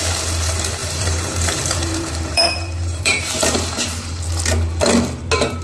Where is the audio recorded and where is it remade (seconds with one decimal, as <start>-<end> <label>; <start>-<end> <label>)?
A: 0.0-0.8 recorded; 0.8-4.2 remade; 4.2-5.6 recorded